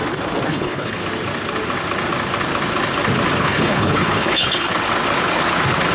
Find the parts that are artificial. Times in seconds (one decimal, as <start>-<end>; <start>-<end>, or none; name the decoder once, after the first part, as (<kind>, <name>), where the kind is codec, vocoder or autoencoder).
0.5-1.0 (codec, HILCodec); 3.4-4.7